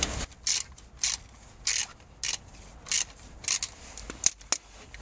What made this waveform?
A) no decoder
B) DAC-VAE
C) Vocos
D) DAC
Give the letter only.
A